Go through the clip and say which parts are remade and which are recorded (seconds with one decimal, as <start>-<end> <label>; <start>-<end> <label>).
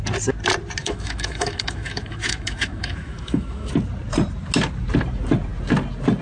0.0-0.8 recorded; 0.8-3.7 remade; 3.7-6.2 recorded